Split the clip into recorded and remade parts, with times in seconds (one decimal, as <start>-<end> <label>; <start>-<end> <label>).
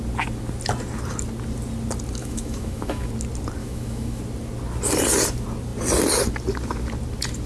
0.0-2.2 recorded; 2.2-3.1 remade; 3.1-3.6 recorded; 3.6-4.2 remade; 4.2-7.5 recorded